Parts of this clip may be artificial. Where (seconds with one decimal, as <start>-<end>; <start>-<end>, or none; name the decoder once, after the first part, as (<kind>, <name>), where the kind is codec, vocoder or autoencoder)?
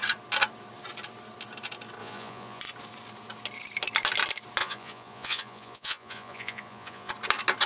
2.0-2.6 (vocoder, Vocos); 4.6-7.1